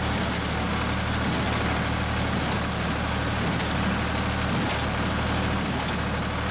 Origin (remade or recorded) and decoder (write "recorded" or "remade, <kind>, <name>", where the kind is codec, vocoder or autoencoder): recorded